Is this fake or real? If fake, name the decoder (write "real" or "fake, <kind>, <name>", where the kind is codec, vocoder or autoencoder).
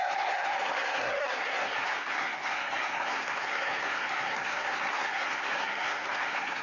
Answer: fake, codec, SNAC